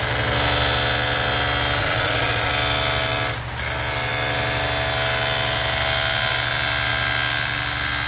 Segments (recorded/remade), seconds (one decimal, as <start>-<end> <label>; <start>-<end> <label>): 0.0-1.8 recorded; 1.8-2.5 remade; 2.5-8.1 recorded